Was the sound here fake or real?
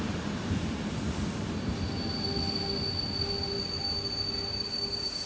real